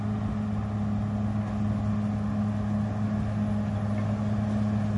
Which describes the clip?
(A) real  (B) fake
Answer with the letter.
A